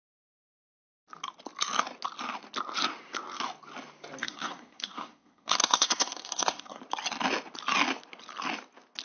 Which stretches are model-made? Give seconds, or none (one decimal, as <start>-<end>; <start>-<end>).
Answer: 4.2-6.8